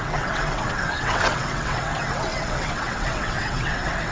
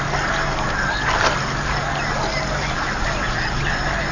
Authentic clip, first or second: second